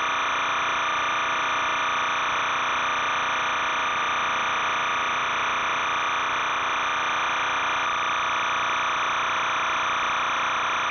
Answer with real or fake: real